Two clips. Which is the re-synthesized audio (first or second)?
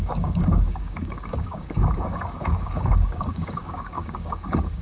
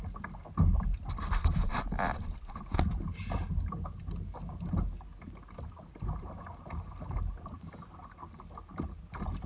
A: first